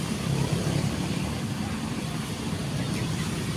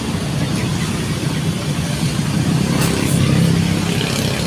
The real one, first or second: second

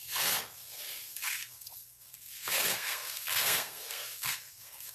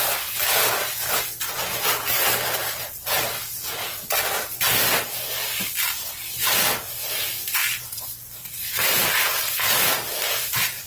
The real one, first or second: second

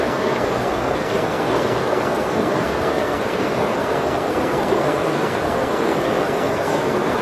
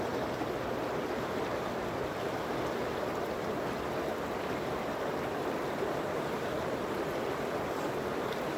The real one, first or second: second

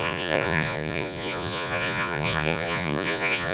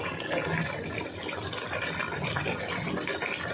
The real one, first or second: second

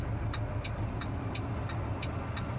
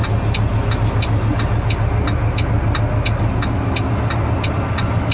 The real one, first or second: second